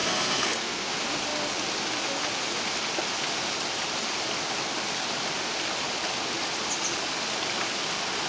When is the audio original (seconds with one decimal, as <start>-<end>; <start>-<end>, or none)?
0.9-8.3